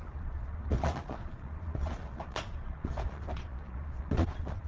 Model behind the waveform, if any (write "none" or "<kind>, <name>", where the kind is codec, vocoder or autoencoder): vocoder, Vocos